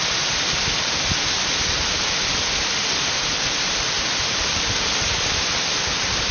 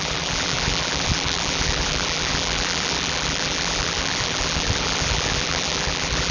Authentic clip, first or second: first